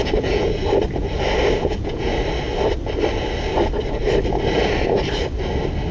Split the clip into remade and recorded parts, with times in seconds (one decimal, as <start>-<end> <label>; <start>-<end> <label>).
0.0-0.6 remade; 0.6-1.6 recorded; 1.6-2.1 remade; 2.1-5.9 recorded